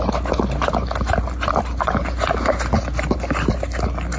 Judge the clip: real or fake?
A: real